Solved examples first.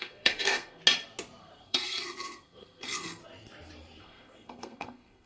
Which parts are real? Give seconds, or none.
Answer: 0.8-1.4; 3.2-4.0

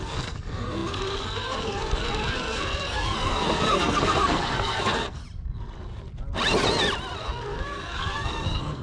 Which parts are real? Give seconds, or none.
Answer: 5.2-7.2

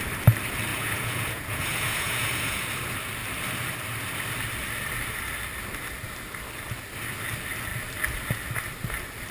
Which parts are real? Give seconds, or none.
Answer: 0.0-0.7; 2.7-9.3

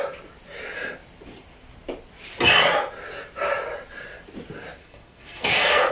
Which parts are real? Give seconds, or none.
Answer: 0.0-4.8

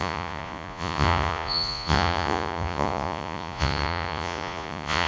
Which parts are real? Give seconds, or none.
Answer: none

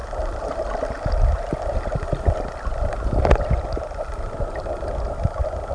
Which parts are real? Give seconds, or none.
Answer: 0.0-5.7

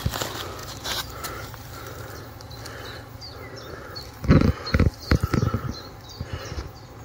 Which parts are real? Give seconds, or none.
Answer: 0.0-0.6; 2.2-7.0